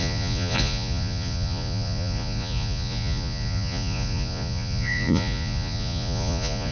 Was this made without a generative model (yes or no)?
no